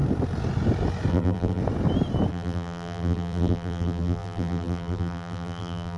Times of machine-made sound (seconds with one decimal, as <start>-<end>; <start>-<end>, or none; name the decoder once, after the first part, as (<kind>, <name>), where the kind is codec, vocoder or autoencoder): 1.1-1.6 (vocoder, BigVGAN v2); 2.3-6.0